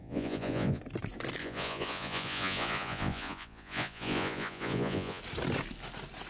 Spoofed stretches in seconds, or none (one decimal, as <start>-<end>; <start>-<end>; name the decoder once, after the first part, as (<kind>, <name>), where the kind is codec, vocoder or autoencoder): 0.0-0.8 (vocoder, Vocos); 1.4-5.2